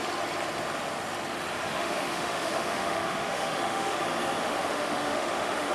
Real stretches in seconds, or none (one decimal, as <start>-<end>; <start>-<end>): 0.0-1.7; 4.0-4.4

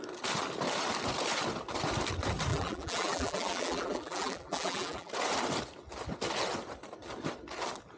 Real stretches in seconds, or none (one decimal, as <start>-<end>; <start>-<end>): 0.0-2.5; 5.1-8.0

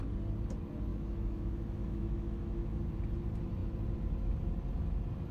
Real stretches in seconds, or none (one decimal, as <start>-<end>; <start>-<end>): 0.0-0.9; 2.8-5.3